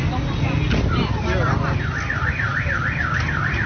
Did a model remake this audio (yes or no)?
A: no